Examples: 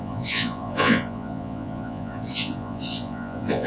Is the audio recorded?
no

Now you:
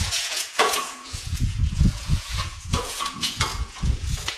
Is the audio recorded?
no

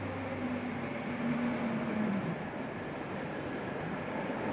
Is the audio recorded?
yes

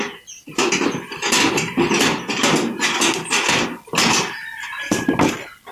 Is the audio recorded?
yes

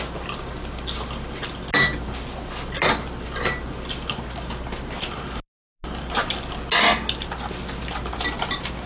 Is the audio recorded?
yes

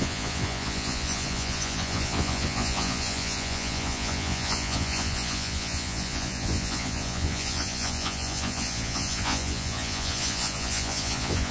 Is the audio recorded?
no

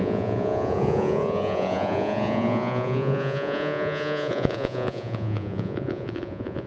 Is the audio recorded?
no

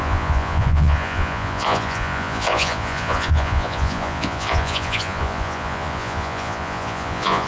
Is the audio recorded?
no